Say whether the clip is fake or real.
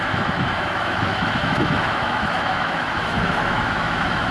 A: fake